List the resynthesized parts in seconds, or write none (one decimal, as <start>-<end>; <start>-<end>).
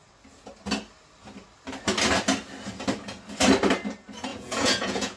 4.3-5.2